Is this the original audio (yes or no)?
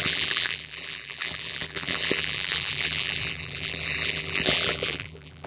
no